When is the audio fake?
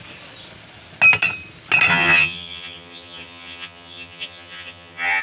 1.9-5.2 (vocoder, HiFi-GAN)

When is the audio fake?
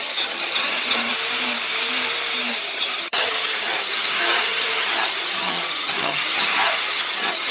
0.0-1.1 (vocoder, HiFi-GAN); 2.5-7.5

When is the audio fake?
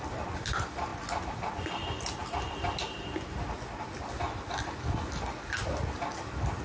none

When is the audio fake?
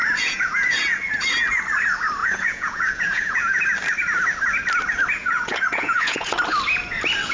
0.0-0.8 (vocoder, Vocos); 2.2-3.6; 5.2-6.3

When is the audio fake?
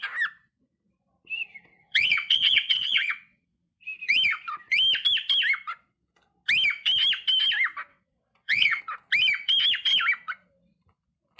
1.8-3.8 (vocoder, WaveNeXt); 7.9-8.8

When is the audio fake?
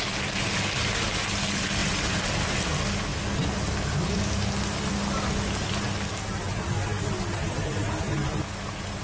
none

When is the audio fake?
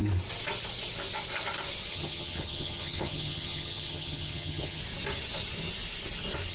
1.9-4.8 (vocoder, HiFi-GAN)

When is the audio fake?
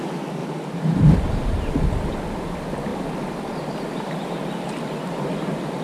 0.4-1.0 (vocoder, BigVGAN v2)